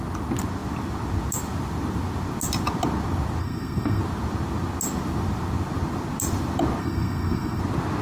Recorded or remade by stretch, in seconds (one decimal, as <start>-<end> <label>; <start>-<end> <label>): 0.0-3.4 recorded; 3.4-4.0 remade; 4.0-6.8 recorded; 6.8-7.6 remade; 7.6-8.0 recorded